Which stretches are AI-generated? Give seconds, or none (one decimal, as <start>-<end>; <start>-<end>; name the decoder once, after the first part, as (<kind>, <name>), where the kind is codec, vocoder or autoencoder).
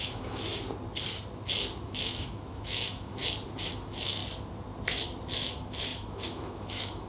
0.0-0.5 (autoencoder, DAC-VAE); 1.8-3.2; 3.7-4.2; 5.4-7.1